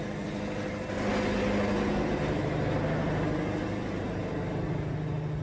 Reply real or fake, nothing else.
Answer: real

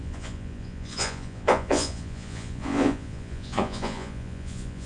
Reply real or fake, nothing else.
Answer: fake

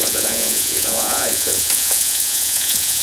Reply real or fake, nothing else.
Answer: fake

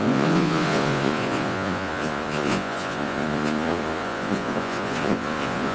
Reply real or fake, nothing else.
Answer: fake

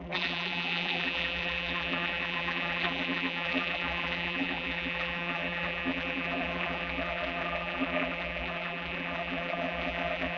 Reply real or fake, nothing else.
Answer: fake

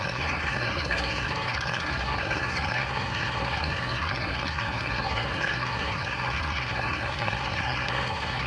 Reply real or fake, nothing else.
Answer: fake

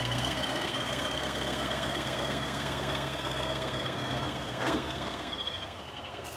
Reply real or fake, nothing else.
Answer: fake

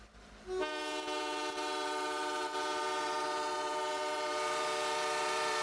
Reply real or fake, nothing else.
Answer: fake